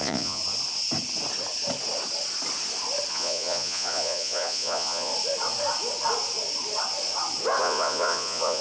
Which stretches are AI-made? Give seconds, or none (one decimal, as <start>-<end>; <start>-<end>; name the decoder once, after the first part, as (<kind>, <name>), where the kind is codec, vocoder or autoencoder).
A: 0.0-0.4 (vocoder, Vocos); 3.1-5.1; 7.6-8.6